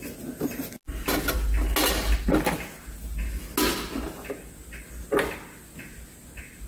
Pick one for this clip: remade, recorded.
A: recorded